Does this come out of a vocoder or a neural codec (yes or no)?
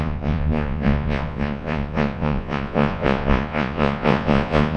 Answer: yes